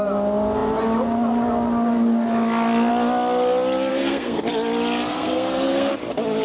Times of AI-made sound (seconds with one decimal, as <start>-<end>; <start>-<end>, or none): 3.9-4.4; 5.1-5.9